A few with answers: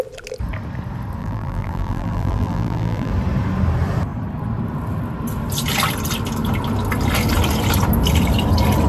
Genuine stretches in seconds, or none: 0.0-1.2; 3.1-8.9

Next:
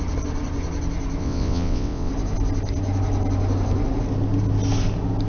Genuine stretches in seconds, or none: 0.0-1.2; 2.1-5.3

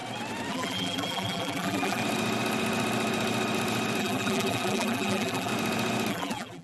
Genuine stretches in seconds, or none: 0.0-0.5; 2.0-4.0; 5.5-6.1

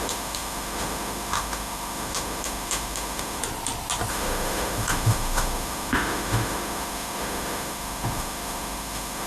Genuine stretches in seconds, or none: 3.4-4.1

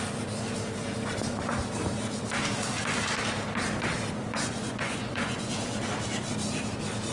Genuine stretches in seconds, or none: 0.0-4.3; 5.5-7.1

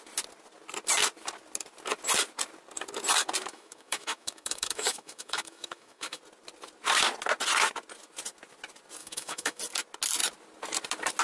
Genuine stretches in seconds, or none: 0.0-3.5; 6.2-9.0; 9.6-11.2

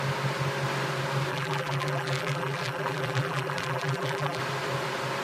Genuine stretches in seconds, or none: 0.0-1.3; 4.4-5.2